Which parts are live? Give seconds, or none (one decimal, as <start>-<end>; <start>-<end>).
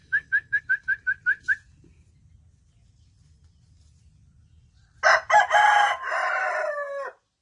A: 0.6-7.4